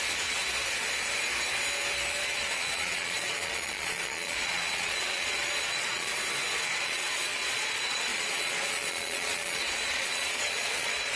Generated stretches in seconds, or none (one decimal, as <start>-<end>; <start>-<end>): 0.0-0.4; 2.1-6.1; 6.6-11.2